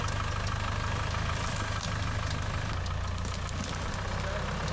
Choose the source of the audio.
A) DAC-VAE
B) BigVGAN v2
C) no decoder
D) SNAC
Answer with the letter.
C